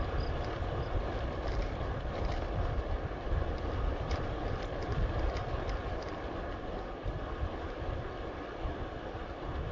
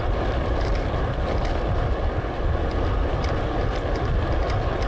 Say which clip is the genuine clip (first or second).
second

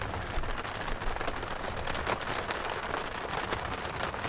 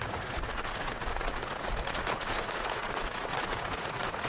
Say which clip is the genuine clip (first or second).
first